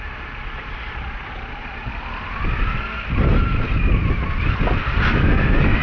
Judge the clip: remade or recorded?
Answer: recorded